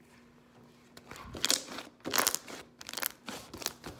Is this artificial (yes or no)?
no